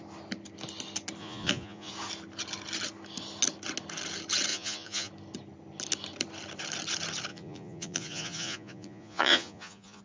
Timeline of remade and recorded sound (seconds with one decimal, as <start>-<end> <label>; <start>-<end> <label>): 0.0-1.2 recorded; 1.2-1.9 remade; 1.9-4.5 recorded; 4.5-5.1 remade; 5.1-7.3 recorded; 7.3-10.0 remade